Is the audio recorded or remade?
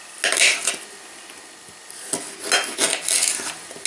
recorded